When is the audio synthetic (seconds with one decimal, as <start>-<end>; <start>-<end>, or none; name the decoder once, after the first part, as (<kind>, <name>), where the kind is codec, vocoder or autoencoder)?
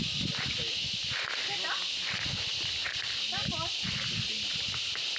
2.8-3.9 (vocoder, BigVGAN v2)